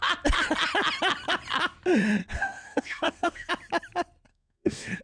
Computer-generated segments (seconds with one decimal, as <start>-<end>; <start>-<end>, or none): 2.2-3.5; 4.3-5.0